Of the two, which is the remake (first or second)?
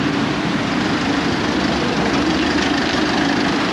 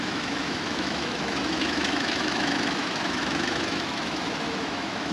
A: second